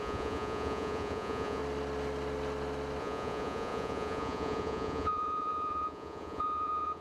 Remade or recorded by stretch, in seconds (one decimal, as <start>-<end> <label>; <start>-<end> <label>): 0.0-1.6 remade; 1.6-3.0 recorded; 3.0-7.0 remade